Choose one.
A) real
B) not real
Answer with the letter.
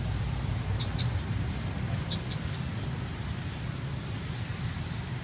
A